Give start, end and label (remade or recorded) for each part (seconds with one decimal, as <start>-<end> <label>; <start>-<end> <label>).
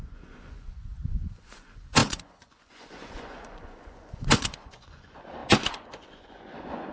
0.0-6.9 remade